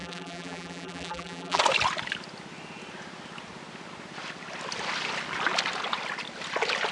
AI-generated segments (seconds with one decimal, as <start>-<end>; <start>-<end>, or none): 0.0-1.6